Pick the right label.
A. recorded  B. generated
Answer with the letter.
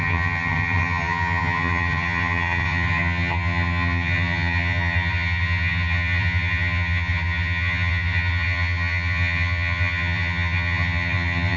B